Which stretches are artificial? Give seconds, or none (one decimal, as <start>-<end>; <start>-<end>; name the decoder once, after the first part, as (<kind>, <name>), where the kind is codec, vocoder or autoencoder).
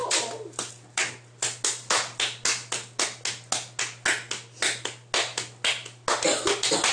0.0-1.1 (vocoder, BigVGAN v2)